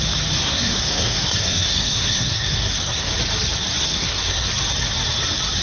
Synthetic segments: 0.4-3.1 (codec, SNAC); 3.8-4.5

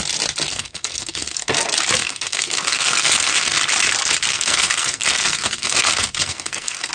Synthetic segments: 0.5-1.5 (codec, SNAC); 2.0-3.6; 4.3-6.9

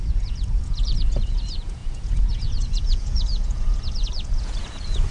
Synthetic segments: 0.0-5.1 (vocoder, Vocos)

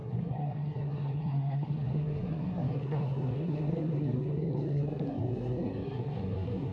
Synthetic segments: 0.0-6.7 (codec, SNAC)

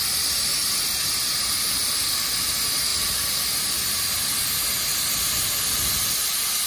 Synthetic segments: none

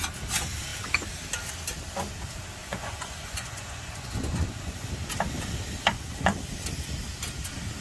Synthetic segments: 2.6-4.9 (vocoder, Vocos); 5.9-6.4

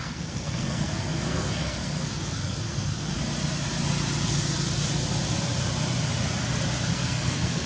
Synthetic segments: 0.0-3.2 (codec, SNAC); 6.9-7.7

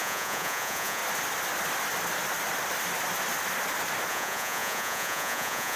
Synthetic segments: 0.0-1.0 (vocoder, Vocos); 4.1-5.8